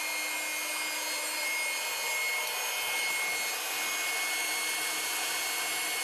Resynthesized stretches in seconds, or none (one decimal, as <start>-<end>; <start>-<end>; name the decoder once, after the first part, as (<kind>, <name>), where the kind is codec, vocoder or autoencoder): none